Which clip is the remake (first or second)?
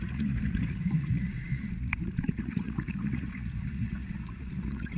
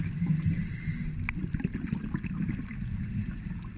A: first